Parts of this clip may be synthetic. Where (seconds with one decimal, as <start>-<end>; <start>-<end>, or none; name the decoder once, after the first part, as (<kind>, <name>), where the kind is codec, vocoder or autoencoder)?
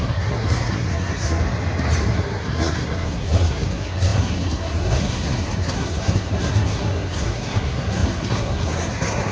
0.0-1.4 (codec, SNAC); 2.0-9.3